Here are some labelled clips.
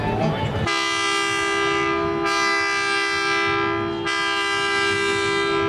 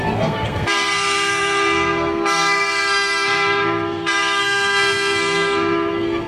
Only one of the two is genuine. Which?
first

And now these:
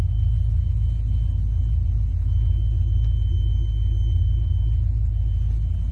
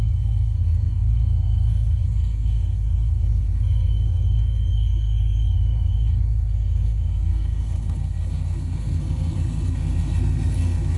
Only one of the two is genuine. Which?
first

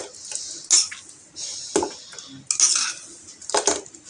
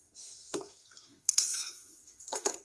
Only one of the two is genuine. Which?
first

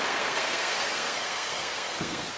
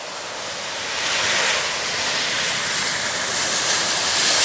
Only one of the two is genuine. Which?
second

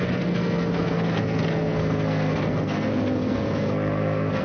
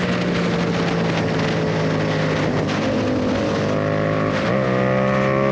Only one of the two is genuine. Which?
second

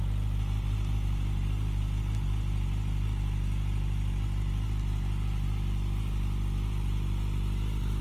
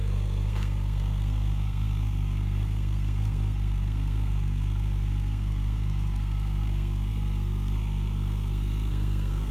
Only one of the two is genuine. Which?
first